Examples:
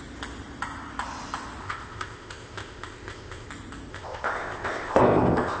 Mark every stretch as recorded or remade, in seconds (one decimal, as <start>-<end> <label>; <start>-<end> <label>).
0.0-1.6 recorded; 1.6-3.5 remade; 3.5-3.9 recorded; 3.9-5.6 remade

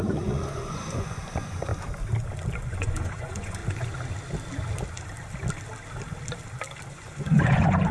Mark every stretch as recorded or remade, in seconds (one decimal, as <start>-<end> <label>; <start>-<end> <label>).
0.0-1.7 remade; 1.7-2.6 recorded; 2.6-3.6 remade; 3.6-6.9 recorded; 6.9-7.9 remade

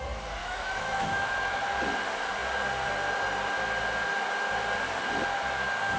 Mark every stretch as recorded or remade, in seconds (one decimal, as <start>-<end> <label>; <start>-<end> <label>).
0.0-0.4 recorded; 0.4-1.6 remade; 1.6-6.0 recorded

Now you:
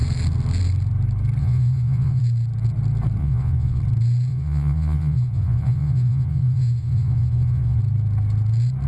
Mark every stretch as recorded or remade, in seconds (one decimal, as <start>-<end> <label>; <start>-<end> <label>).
0.0-1.4 recorded; 1.4-2.2 remade; 2.2-3.2 recorded; 3.2-3.8 remade; 3.8-4.3 recorded; 4.3-7.8 remade; 7.8-8.9 recorded

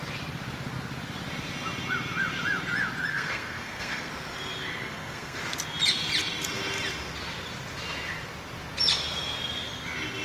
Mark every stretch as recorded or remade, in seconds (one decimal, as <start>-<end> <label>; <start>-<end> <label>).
0.0-3.1 recorded; 3.1-4.1 remade; 4.1-4.6 recorded; 4.6-5.4 remade; 5.4-10.2 recorded